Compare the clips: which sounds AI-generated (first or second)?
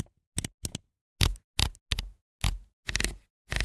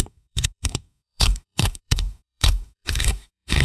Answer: second